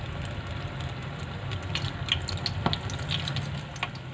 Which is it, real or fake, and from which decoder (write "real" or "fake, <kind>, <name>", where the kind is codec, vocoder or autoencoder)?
real